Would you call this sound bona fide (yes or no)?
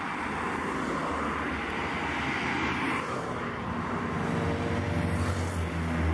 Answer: yes